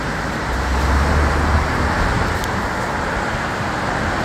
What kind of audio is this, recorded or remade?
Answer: recorded